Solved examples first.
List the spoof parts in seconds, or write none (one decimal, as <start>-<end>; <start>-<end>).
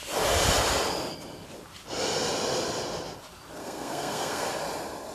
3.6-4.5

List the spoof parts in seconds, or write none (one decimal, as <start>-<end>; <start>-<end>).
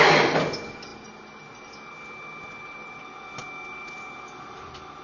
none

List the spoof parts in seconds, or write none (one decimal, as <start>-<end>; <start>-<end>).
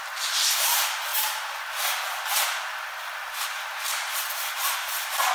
none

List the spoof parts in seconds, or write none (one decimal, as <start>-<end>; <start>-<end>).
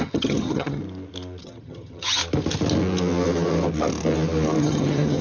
0.0-0.8; 1.4-2.2; 4.6-5.2